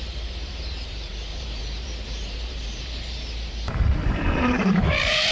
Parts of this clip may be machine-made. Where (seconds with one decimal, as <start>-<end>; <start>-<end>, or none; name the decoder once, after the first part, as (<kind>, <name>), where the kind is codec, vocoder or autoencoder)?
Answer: 0.0-5.3 (vocoder, BigVGAN v2)